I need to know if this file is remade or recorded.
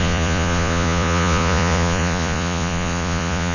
remade